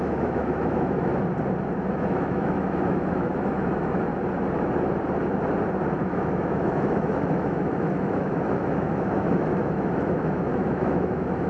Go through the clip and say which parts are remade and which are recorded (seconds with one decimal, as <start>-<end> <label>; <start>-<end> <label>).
0.0-1.1 remade; 1.1-1.9 recorded; 1.9-4.1 remade; 4.1-6.0 recorded; 6.0-11.5 remade